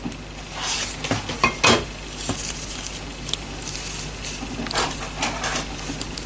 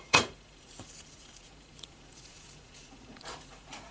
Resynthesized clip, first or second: second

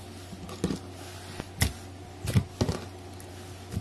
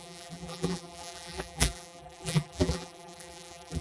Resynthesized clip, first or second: second